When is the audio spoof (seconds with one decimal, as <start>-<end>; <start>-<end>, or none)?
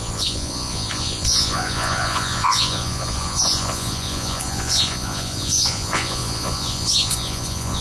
0.0-7.8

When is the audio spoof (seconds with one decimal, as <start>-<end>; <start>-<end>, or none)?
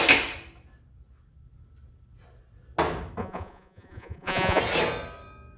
3.2-4.6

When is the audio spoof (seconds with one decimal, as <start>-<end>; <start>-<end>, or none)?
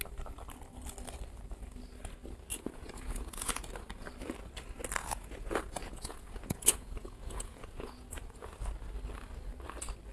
2.5-3.7; 5.0-8.6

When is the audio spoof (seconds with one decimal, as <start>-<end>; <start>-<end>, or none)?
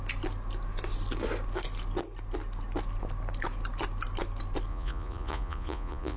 4.7-6.2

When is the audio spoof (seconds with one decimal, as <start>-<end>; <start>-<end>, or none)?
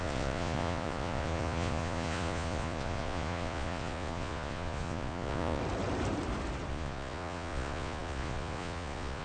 0.0-5.6; 6.7-9.2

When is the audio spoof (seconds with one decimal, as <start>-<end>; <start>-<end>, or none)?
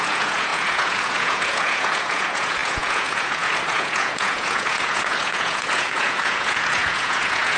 0.0-7.6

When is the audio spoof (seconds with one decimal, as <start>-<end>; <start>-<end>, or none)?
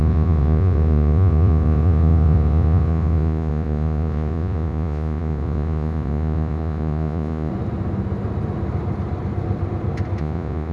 0.0-7.5; 10.2-10.7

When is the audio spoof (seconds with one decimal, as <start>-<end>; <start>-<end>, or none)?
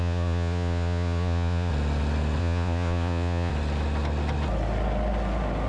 0.0-1.7; 2.4-3.5